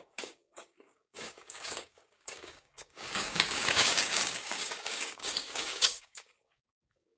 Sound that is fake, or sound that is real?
fake